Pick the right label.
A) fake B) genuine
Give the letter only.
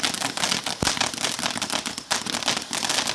B